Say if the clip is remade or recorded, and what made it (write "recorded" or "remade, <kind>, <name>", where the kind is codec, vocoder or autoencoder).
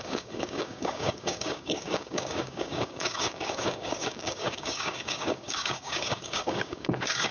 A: remade, codec, DAC